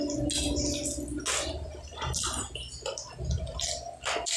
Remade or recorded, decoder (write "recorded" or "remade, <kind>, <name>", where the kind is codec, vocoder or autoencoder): recorded